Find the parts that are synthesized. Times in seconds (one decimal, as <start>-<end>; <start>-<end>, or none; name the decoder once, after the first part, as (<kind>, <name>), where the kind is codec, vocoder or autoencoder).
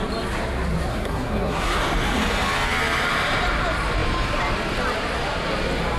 0.9-1.8 (codec, SNAC)